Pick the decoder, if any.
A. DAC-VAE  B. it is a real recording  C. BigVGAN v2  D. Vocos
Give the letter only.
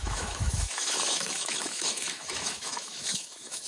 A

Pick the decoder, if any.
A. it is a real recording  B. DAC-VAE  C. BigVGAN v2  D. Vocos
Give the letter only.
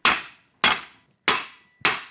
A